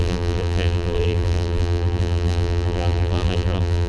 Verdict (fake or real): fake